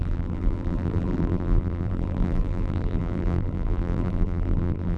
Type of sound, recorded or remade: remade